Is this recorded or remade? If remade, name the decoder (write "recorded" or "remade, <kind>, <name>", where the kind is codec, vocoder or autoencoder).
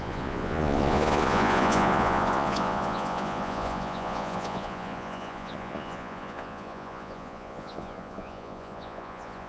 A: remade, vocoder, Vocos